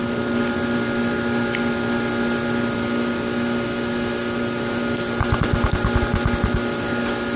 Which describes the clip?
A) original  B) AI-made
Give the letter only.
A